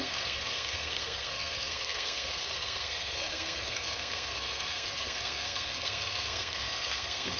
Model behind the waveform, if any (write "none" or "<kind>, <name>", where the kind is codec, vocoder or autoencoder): codec, SNAC